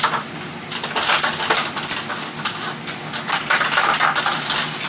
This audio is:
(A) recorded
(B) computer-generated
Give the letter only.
A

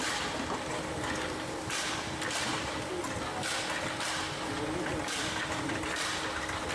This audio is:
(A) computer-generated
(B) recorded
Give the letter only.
B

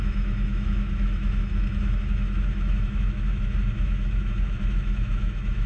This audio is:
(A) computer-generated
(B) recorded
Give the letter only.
A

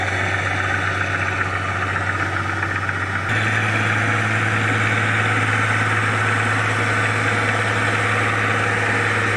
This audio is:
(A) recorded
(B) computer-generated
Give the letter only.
A